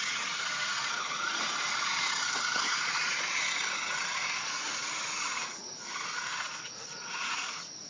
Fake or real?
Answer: fake